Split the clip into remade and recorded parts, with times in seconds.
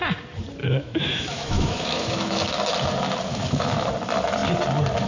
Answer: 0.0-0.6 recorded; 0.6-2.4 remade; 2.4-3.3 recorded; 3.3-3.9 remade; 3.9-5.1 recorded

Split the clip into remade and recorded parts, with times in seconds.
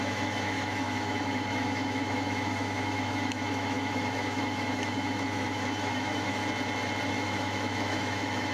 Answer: 0.0-6.4 remade; 6.4-7.1 recorded; 7.1-8.5 remade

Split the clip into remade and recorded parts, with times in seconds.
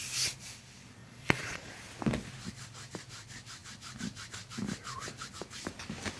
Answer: 0.0-1.0 recorded; 1.0-1.7 remade; 1.7-6.2 recorded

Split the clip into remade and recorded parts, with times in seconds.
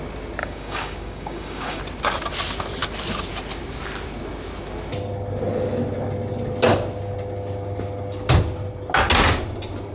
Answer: 0.0-0.4 recorded; 0.4-1.8 remade; 1.8-9.9 recorded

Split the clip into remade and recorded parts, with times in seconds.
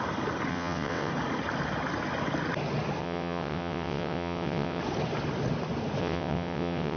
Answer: 0.0-0.5 recorded; 0.5-1.1 remade; 1.1-3.0 recorded; 3.0-4.8 remade; 4.8-6.0 recorded; 6.0-7.0 remade